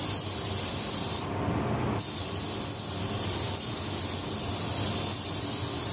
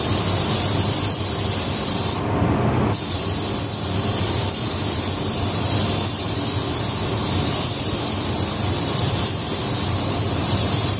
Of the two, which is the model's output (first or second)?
second